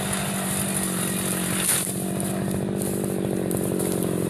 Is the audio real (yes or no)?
yes